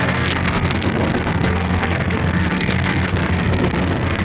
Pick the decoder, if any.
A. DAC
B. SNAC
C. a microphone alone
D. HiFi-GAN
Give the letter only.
B